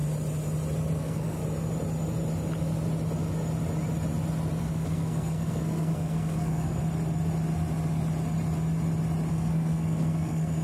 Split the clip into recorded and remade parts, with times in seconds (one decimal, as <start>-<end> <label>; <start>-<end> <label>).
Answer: 0.0-1.0 recorded; 1.0-1.4 remade; 1.4-4.6 recorded; 4.6-6.8 remade; 6.8-9.3 recorded; 9.3-10.6 remade